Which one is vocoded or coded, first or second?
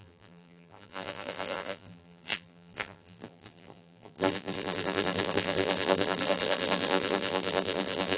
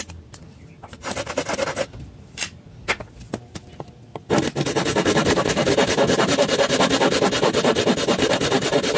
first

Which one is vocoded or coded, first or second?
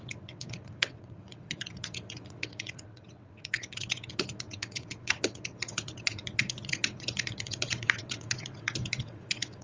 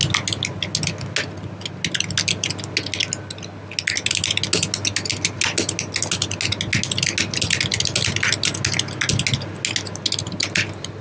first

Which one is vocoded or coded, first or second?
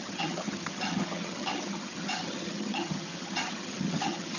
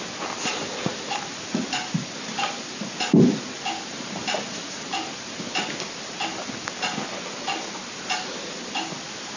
first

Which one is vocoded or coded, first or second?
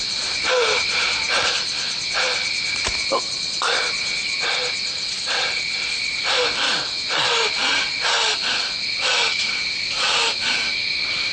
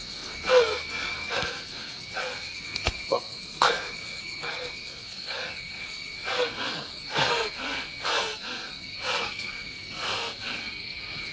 second